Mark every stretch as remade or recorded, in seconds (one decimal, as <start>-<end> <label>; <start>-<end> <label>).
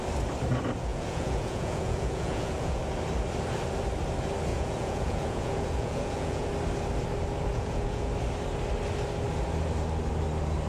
0.0-0.9 recorded; 0.9-2.8 remade; 2.8-4.5 recorded; 4.5-6.5 remade; 6.5-7.5 recorded; 7.5-8.1 remade; 8.1-10.7 recorded